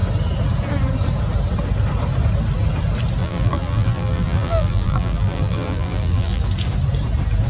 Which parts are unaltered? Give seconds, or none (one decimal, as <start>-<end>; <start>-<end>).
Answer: 0.0-3.2; 6.4-7.5